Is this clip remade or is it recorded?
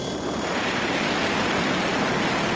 recorded